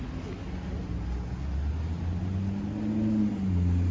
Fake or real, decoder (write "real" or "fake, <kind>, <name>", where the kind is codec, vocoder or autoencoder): real